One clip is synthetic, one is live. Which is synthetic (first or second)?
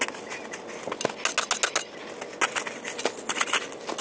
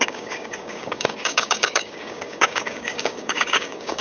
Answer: second